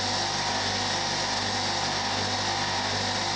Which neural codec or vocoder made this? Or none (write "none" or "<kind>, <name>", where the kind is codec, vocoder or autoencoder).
none